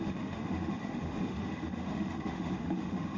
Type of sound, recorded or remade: remade